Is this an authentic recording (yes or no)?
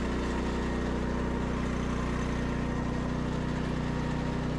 yes